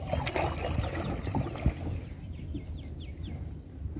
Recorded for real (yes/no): yes